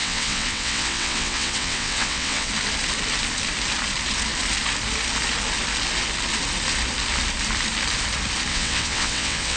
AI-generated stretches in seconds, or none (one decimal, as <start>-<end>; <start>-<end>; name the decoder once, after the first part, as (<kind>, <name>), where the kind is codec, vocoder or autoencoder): 0.0-2.5 (vocoder, WaveNeXt); 8.5-9.6